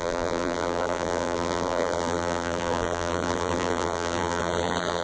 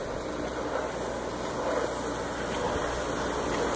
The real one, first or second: second